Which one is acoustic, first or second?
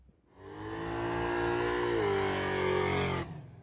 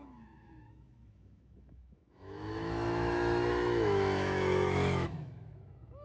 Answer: first